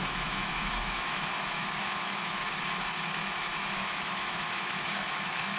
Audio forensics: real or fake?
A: fake